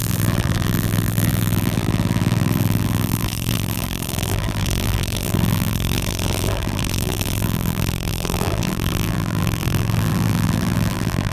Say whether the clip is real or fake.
fake